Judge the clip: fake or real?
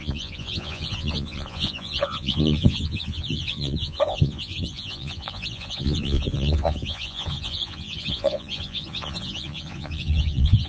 fake